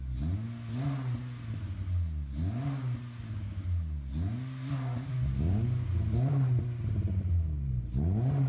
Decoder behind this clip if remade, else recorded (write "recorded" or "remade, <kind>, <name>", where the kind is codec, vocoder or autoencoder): recorded